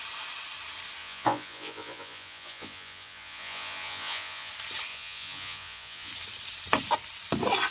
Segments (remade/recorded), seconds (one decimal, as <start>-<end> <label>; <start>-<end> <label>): 0.0-1.0 recorded; 1.0-4.5 remade; 4.5-4.9 recorded; 4.9-6.1 remade; 6.1-7.7 recorded